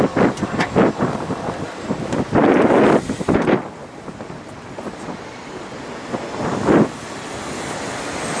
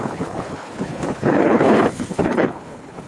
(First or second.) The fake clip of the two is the second